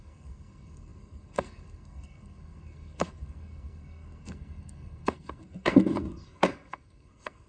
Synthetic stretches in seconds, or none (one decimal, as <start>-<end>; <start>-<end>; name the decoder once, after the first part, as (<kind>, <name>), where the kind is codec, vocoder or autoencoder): 0.0-7.5 (codec, SNAC)